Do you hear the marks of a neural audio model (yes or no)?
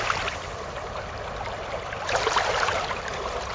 no